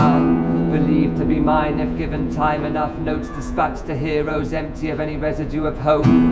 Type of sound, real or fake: fake